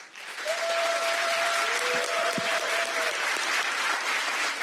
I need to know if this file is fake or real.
fake